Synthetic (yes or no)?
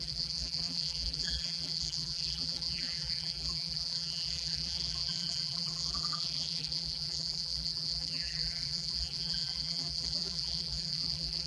yes